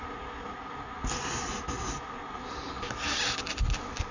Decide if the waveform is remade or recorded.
recorded